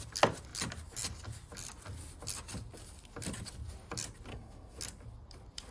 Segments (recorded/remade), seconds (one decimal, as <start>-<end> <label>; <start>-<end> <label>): 0.0-4.3 recorded; 4.3-4.8 remade; 4.8-5.7 recorded